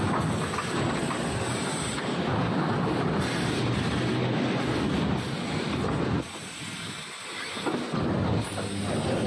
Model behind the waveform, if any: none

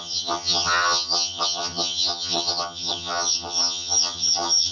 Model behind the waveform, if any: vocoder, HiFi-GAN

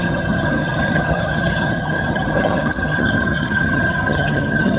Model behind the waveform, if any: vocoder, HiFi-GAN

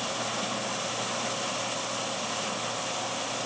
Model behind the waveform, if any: none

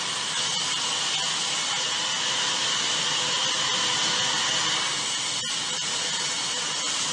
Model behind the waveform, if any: none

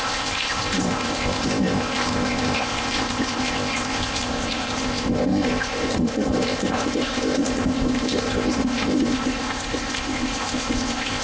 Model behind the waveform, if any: codec, ZipCodec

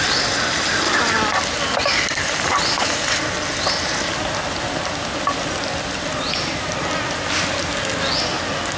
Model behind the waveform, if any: none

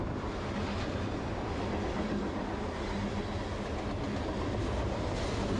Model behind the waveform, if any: none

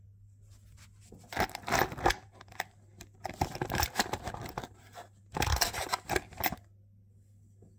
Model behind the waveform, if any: none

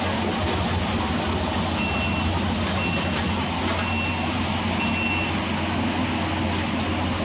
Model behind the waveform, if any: none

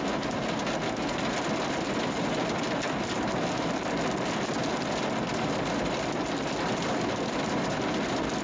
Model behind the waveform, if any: none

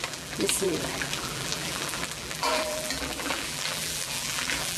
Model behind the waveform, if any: vocoder, BigVGAN v2